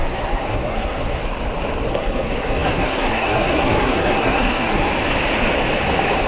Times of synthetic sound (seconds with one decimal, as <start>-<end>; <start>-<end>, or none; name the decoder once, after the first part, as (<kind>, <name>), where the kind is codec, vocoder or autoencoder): 0.0-1.2 (codec, SNAC); 1.9-4.9